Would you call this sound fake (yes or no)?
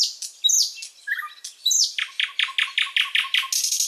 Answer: no